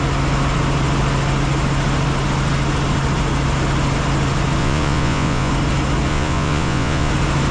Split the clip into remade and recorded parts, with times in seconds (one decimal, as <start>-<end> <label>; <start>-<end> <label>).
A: 0.0-4.6 recorded; 4.6-5.5 remade; 5.5-6.1 recorded; 6.1-7.1 remade; 7.1-7.5 recorded